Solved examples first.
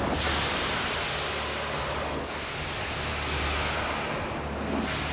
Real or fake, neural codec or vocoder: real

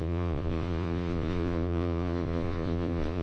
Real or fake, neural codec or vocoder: fake, vocoder, Vocos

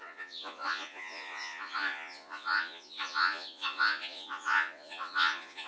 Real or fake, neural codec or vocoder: fake, vocoder, Vocos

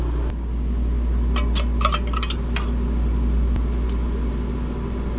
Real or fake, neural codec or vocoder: real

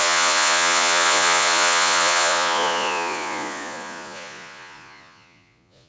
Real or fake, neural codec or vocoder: fake, vocoder, Vocos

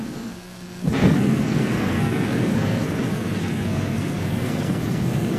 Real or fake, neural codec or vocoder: fake, codec, SNAC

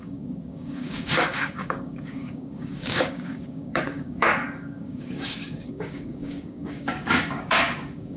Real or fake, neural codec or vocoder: fake, codec, DAC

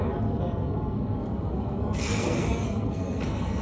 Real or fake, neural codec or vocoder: fake, codec, SNAC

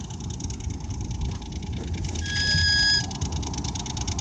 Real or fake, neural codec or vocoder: real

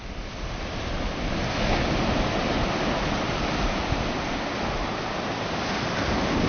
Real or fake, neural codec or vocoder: real